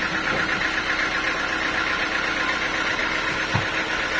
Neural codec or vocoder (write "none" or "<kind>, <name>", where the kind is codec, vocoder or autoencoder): none